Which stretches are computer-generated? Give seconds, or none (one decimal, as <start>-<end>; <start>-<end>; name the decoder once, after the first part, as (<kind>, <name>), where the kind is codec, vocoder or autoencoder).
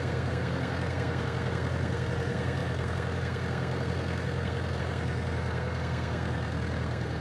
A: 0.0-7.2 (codec, SNAC)